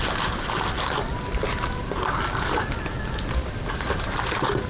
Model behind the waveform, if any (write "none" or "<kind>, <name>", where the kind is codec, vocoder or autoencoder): none